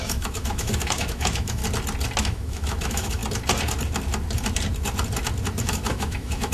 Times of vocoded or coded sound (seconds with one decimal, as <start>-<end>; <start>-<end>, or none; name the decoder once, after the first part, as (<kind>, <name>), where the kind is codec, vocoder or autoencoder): 0.0-1.6 (autoencoder, DAC-VAE); 2.2-3.2; 5.6-6.5